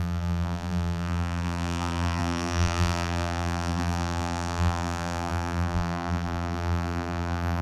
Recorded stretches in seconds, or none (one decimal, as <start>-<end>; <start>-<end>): none